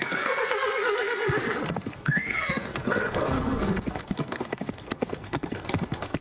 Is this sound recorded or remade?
remade